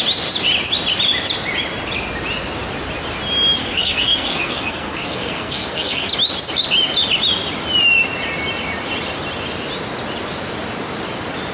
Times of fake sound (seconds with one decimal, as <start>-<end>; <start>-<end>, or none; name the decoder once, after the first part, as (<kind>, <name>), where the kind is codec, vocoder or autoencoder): 3.6-6.1 (codec, SNAC)